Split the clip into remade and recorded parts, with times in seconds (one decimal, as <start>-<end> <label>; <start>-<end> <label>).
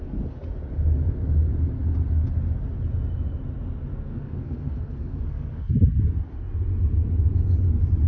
0.0-3.9 recorded; 3.9-5.7 remade; 5.7-8.1 recorded